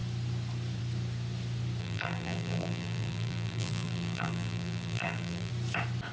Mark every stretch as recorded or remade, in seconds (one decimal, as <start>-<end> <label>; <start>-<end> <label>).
0.0-1.8 recorded; 1.8-5.5 remade; 5.5-6.1 recorded